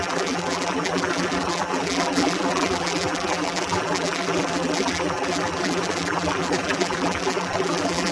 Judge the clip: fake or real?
fake